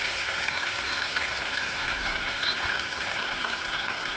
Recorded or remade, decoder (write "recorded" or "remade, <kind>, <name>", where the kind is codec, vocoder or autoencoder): remade, codec, SNAC